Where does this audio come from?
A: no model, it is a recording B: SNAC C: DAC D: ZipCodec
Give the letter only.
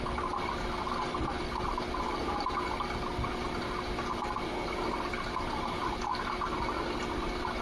A